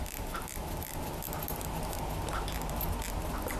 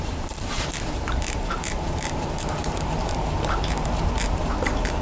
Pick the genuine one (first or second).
first